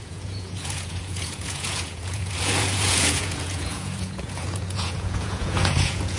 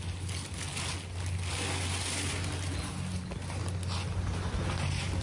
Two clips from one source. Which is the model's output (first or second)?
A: first